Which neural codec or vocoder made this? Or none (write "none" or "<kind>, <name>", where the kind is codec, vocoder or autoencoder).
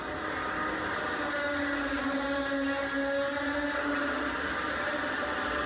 none